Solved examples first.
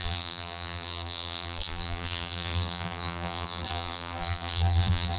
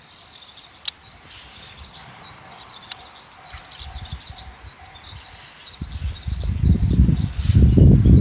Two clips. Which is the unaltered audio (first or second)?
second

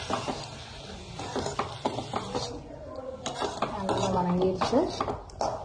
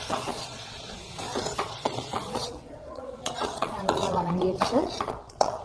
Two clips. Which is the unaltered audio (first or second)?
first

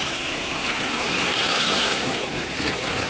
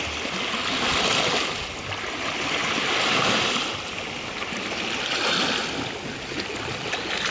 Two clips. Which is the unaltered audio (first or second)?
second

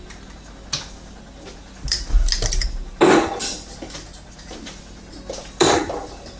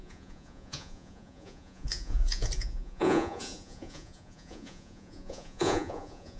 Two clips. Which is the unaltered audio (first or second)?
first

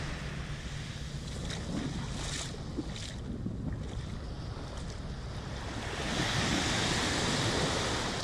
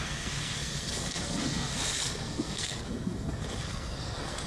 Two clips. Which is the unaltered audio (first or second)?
first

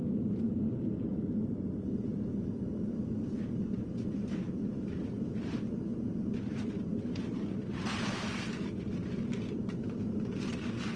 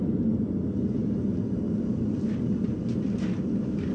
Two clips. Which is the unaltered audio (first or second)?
second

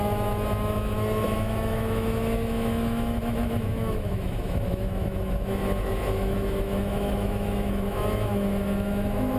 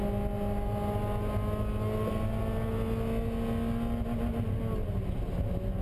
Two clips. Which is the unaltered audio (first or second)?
second